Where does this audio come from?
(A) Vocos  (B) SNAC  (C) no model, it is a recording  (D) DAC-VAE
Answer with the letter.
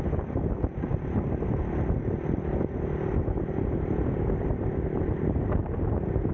C